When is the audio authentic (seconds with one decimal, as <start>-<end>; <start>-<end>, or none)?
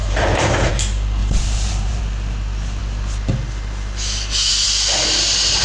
0.7-1.2; 2.0-5.6